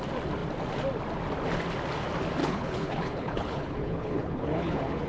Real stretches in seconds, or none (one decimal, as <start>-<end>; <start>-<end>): 0.0-2.4